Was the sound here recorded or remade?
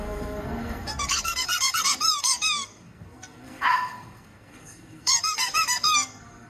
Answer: remade